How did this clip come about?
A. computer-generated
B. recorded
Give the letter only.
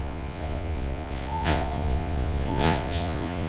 A